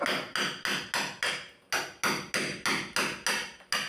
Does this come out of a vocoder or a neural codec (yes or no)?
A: no